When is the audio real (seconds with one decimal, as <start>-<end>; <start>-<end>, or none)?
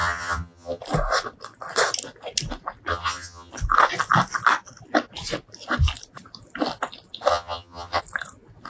0.8-2.9; 3.5-7.3; 8.0-8.7